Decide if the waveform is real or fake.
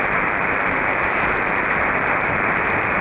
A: real